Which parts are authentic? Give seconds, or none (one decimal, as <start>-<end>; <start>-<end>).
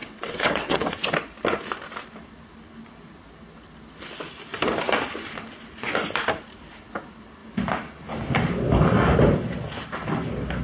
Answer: 1.1-10.6